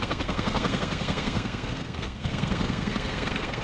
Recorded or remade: remade